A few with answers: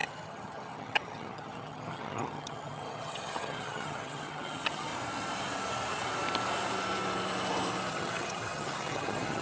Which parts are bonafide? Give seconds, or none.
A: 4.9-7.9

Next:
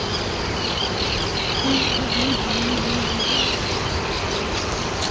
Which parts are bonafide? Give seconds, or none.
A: 0.0-5.1

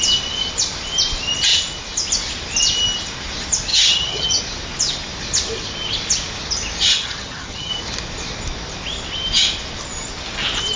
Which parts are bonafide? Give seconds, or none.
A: 0.0-3.7; 4.4-6.9; 7.7-10.8

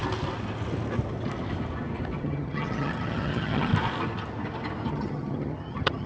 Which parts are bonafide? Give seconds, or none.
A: 0.0-2.2; 3.7-4.9

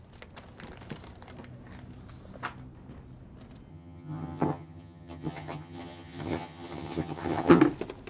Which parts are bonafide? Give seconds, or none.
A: 0.0-3.7; 7.6-8.1

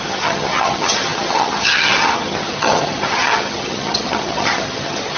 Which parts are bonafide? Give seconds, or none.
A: none